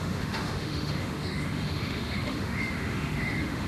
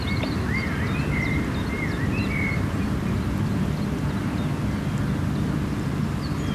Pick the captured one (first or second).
second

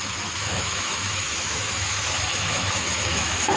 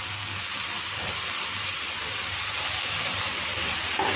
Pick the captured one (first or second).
second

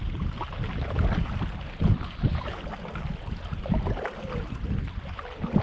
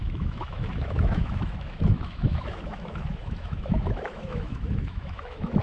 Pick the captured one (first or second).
first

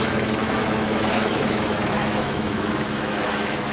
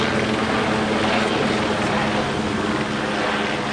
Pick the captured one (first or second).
second